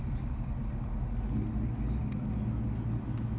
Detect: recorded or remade recorded